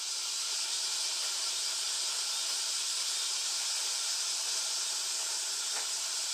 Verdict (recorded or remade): recorded